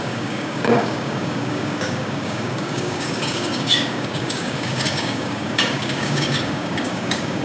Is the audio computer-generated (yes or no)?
yes